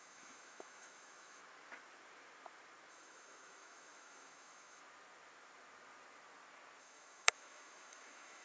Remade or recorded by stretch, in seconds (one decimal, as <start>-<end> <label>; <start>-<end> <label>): 0.0-1.4 remade; 1.4-2.9 recorded; 2.9-4.8 remade; 4.8-6.8 recorded; 6.8-8.4 remade